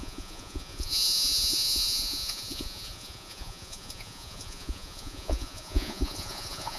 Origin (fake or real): fake